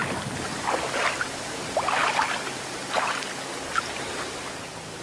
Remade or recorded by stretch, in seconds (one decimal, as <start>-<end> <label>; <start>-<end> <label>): 0.0-5.0 recorded